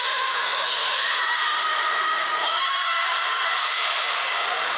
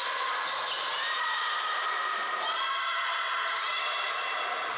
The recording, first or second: second